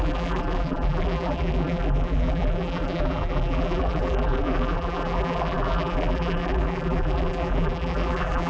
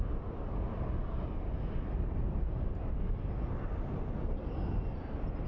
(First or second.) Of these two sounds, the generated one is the first